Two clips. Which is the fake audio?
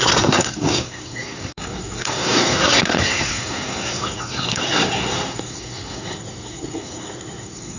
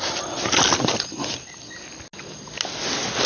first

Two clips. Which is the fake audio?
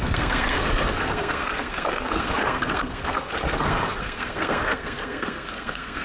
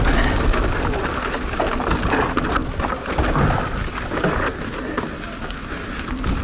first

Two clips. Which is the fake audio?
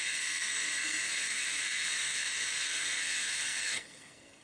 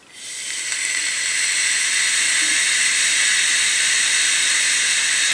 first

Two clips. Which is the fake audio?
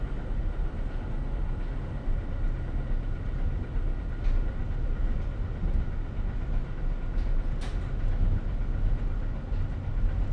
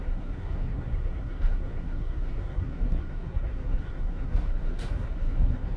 second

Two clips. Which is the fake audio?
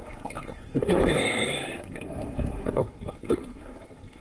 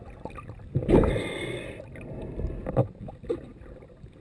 first